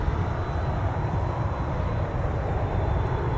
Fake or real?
real